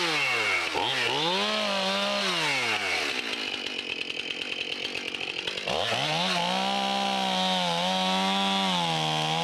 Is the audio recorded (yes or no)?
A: yes